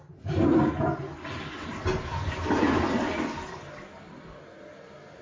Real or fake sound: real